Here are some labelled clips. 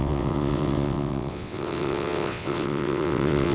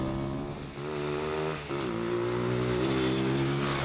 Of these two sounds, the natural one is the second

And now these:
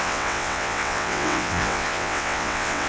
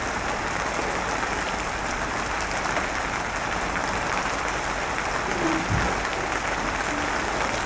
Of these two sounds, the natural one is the second